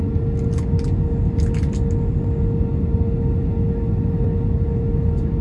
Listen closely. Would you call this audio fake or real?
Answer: real